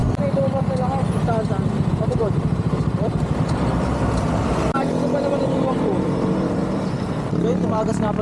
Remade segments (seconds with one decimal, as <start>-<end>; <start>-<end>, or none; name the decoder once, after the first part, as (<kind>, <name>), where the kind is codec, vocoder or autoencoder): 1.9-8.2 (vocoder, BigVGAN v2)